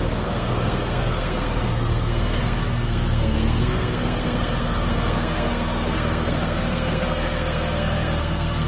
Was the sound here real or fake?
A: fake